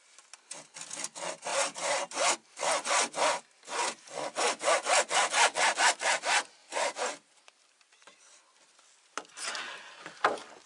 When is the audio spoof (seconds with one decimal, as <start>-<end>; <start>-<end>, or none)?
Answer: 1.5-3.4; 6.6-7.8